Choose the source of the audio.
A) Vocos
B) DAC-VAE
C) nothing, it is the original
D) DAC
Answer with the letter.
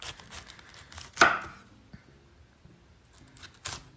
C